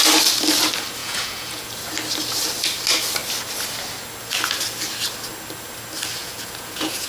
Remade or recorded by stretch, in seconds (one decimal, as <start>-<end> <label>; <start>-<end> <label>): 0.0-1.0 recorded; 1.0-1.7 remade; 1.7-6.2 recorded; 6.2-7.1 remade